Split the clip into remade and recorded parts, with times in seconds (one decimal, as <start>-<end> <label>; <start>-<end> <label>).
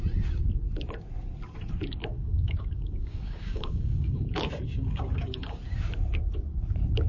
0.0-2.0 recorded; 2.0-5.6 remade; 5.6-7.1 recorded